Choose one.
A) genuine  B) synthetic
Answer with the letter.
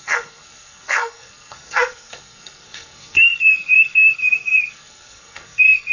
B